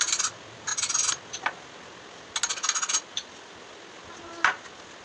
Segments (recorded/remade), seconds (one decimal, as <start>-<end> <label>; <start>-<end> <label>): 0.0-5.0 recorded